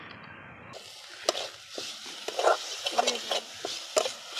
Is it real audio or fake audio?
real